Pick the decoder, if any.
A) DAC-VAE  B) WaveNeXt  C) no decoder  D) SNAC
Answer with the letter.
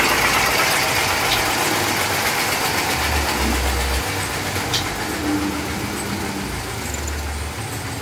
C